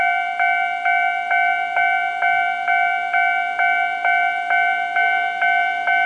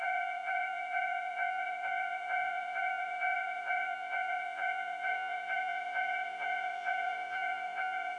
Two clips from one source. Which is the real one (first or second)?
first